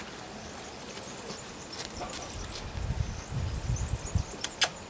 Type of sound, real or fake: real